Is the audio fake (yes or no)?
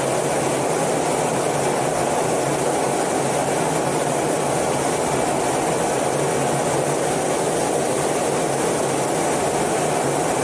no